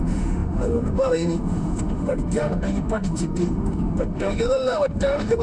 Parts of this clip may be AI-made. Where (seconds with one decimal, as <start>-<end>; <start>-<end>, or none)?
0.0-5.4